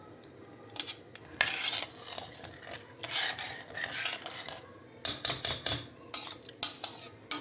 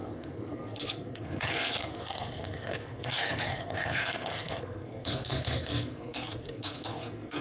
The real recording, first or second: first